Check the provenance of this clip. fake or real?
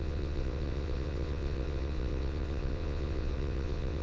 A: fake